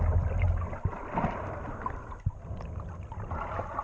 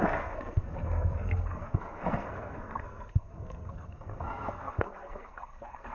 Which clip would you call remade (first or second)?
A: second